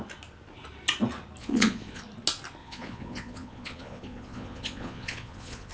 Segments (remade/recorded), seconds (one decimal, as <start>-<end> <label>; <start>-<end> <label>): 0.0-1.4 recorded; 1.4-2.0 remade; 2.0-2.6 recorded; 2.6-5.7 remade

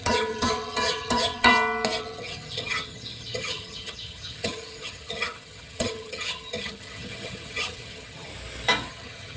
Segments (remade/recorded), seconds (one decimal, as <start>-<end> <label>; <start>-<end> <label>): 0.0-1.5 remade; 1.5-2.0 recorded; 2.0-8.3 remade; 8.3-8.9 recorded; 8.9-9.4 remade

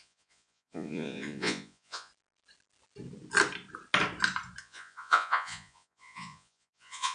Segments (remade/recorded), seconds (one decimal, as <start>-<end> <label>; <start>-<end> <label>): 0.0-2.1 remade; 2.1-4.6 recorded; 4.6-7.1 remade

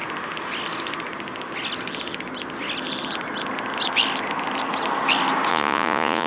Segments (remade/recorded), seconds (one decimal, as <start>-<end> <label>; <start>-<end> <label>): 0.0-5.5 recorded; 5.5-6.3 remade